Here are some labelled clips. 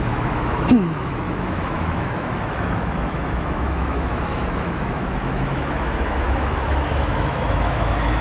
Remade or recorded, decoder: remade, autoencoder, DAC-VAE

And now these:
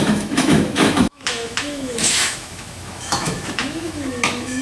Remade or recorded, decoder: remade, autoencoder, DAC-VAE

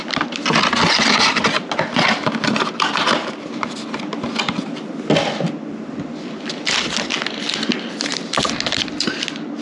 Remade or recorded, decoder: recorded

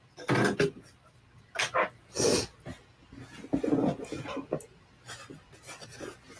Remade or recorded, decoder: recorded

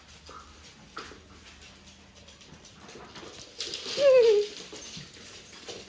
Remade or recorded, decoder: recorded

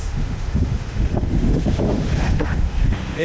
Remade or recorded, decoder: remade, autoencoder, DAC-VAE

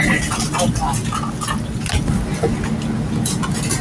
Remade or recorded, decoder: recorded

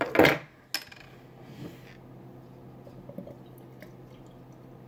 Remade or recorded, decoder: recorded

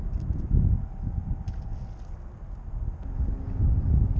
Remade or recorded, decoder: recorded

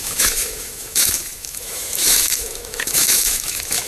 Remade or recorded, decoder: remade, autoencoder, DAC-VAE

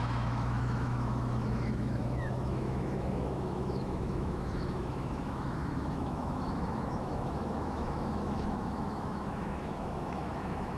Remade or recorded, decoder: remade, autoencoder, DAC-VAE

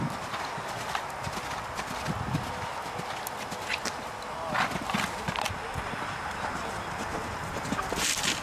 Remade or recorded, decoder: recorded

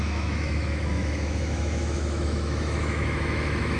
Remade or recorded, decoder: remade, autoencoder, DAC-VAE